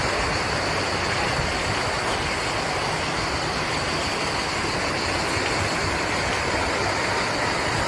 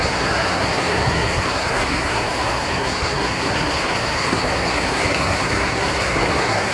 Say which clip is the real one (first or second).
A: first